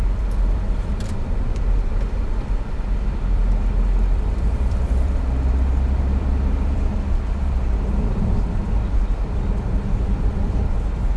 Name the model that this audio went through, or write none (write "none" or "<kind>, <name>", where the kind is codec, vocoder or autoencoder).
vocoder, BigVGAN v2